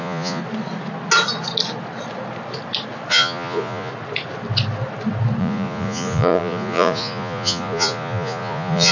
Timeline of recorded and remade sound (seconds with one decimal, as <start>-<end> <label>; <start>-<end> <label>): 0.0-0.4 remade; 0.4-3.1 recorded; 3.1-3.9 remade; 3.9-5.4 recorded; 5.4-8.9 remade